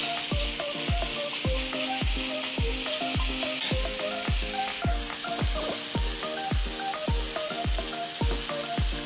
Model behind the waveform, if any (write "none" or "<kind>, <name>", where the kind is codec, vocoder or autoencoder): none